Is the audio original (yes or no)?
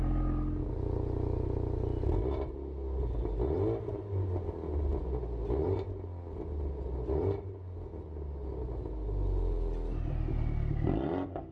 yes